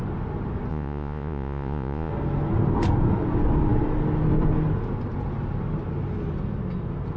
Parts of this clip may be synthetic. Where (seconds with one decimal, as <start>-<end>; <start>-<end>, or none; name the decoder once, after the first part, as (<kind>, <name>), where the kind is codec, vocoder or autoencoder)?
0.7-2.1 (vocoder, Vocos)